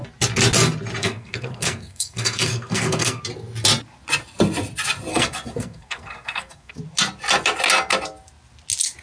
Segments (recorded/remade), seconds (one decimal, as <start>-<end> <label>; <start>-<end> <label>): 0.0-1.0 recorded; 1.0-3.2 remade; 3.2-5.1 recorded; 5.1-6.7 remade; 6.7-9.0 recorded